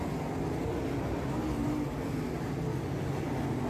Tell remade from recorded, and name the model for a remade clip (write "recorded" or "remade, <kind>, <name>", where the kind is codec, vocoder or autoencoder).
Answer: recorded